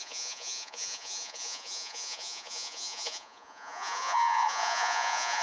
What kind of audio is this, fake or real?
fake